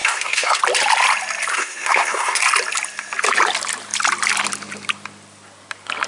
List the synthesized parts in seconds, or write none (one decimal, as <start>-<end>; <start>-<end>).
0.0-0.6; 1.5-2.4

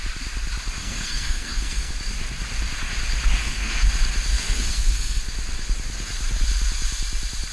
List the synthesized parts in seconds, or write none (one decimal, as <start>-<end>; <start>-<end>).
0.8-1.9; 3.4-3.9; 4.3-5.2

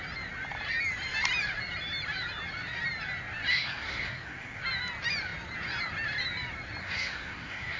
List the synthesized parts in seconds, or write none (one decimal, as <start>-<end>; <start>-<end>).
3.5-4.6; 6.8-7.8

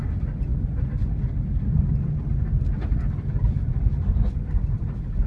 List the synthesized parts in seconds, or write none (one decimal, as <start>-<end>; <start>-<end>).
none